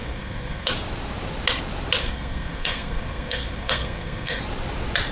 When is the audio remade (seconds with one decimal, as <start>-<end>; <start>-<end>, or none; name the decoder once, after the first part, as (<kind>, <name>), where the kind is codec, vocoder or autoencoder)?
0.0-0.7 (codec, SNAC); 2.0-4.4